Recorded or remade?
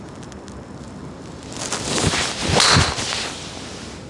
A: recorded